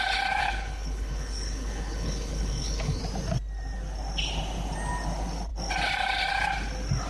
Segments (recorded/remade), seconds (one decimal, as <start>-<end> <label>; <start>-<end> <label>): 0.0-0.4 recorded; 0.4-3.0 remade; 3.0-7.1 recorded